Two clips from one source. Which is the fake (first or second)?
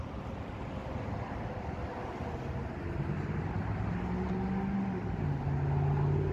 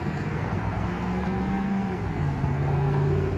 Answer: second